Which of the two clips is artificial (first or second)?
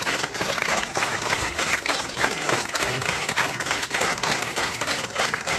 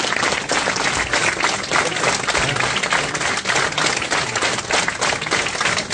first